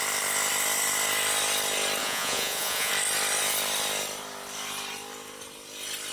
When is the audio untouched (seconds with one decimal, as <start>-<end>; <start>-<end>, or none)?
0.0-2.0; 2.9-6.1